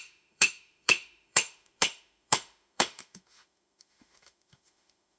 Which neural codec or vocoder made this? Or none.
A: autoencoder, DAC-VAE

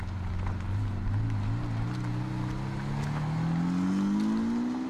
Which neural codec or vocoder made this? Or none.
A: none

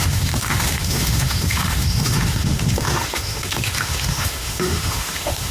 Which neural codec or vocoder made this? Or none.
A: autoencoder, DAC-VAE